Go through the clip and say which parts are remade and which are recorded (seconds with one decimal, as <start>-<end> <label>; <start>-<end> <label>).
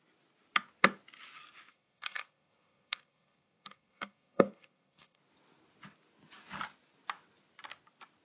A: 0.0-1.7 recorded; 1.7-5.2 remade; 5.2-8.2 recorded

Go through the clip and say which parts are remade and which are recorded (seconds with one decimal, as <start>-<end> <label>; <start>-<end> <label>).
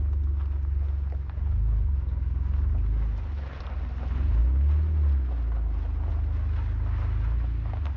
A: 0.0-8.0 recorded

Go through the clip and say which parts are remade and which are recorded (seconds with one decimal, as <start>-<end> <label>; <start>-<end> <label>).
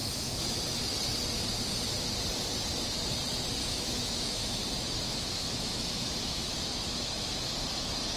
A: 0.0-0.6 remade; 0.6-3.6 recorded; 3.6-7.5 remade; 7.5-8.2 recorded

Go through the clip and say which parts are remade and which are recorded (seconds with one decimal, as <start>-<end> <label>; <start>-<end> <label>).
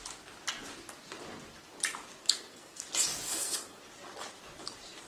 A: 0.0-2.2 recorded; 2.2-2.8 remade; 2.8-3.3 recorded; 3.3-3.8 remade; 3.8-5.1 recorded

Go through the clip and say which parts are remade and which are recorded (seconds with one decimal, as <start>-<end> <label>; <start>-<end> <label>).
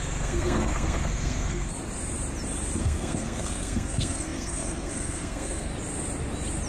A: 0.0-1.7 remade; 1.7-2.8 recorded; 2.8-5.7 remade; 5.7-6.7 recorded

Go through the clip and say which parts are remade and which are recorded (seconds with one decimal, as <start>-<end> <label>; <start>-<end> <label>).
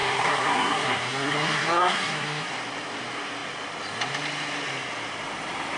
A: 0.0-2.5 remade; 2.5-5.8 recorded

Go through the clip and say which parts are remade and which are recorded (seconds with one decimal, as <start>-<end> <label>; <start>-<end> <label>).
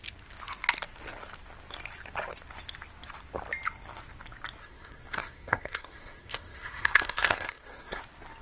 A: 0.0-4.6 recorded; 4.6-8.0 remade; 8.0-8.4 recorded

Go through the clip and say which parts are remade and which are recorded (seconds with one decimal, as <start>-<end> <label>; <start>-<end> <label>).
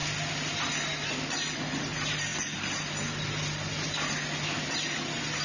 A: 0.0-5.4 recorded